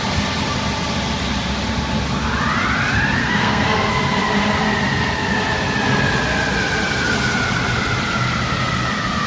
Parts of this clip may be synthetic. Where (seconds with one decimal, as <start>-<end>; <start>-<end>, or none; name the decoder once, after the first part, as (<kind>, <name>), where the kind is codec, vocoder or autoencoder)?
3.2-3.9 (codec, SNAC)